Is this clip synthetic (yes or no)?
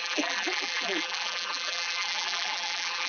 yes